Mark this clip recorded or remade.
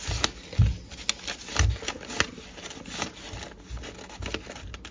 recorded